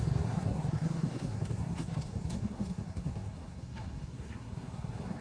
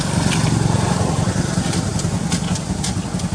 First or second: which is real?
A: second